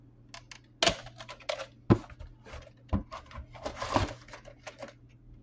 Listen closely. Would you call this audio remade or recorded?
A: recorded